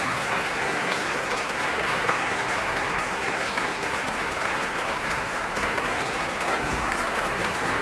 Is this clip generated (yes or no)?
yes